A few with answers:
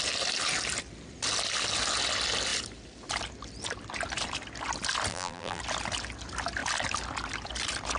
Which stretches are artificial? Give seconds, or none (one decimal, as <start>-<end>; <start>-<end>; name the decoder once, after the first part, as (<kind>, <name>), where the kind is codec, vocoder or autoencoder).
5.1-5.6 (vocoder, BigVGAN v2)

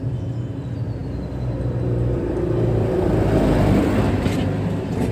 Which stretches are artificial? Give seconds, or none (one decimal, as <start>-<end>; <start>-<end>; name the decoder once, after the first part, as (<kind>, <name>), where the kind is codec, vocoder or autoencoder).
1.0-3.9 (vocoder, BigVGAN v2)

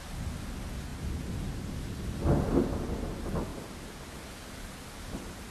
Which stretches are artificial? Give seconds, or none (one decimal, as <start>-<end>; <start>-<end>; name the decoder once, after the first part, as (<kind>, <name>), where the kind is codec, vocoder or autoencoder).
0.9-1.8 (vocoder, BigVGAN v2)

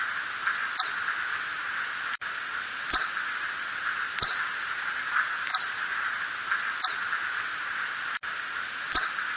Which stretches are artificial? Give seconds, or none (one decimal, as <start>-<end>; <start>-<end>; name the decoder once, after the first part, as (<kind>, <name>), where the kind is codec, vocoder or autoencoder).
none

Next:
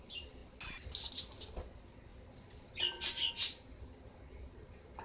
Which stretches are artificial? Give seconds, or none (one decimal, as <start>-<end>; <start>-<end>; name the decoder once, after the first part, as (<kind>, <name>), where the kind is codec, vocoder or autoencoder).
2.1-3.3 (vocoder, BigVGAN v2)